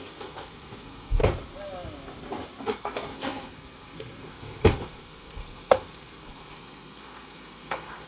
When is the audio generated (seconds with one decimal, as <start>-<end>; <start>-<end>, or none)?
0.0-1.2; 2.6-8.1